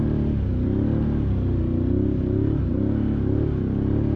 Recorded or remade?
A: recorded